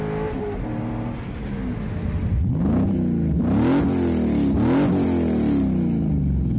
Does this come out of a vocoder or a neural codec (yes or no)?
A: no